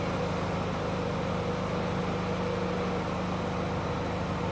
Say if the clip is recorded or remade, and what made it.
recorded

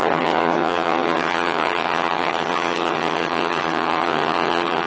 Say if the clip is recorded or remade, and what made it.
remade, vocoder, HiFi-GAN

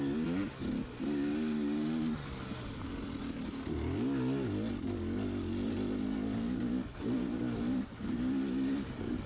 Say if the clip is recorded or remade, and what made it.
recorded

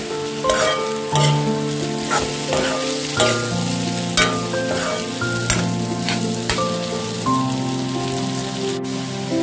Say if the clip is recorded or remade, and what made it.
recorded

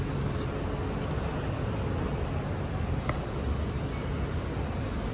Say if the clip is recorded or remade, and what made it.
recorded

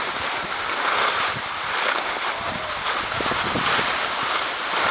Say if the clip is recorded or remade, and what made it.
recorded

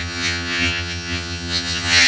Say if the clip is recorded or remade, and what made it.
remade, vocoder, HiFi-GAN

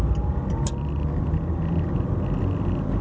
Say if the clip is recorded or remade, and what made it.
recorded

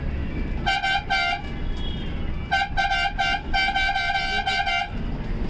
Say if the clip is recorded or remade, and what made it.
recorded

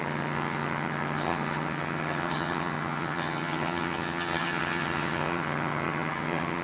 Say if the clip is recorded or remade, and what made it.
remade, vocoder, HiFi-GAN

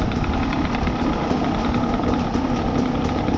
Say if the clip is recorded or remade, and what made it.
recorded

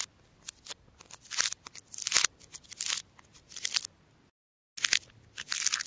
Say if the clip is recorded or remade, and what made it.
recorded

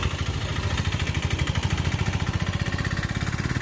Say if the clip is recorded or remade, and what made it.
recorded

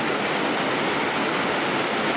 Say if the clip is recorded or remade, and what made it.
recorded